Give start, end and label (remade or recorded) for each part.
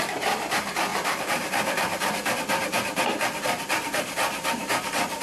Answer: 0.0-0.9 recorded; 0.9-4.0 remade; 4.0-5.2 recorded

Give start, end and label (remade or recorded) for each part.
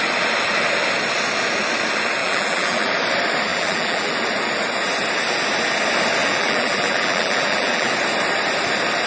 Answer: 0.0-2.2 recorded; 2.2-2.9 remade; 2.9-3.5 recorded; 3.5-4.1 remade; 4.1-6.2 recorded; 6.2-7.9 remade; 7.9-9.1 recorded